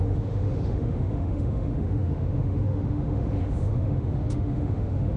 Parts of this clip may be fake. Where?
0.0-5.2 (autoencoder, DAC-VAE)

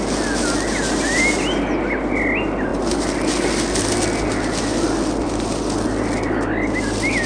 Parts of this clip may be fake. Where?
none